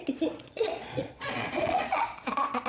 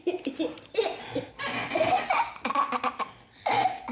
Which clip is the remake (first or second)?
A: first